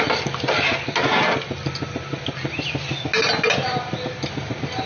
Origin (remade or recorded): recorded